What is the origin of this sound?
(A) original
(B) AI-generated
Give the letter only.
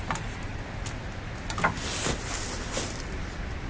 A